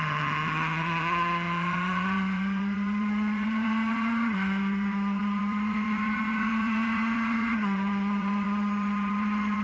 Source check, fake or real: fake